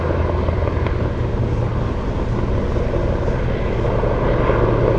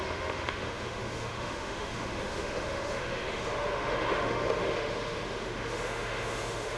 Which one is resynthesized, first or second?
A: second